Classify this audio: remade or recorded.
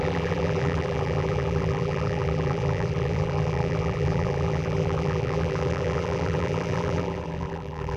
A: remade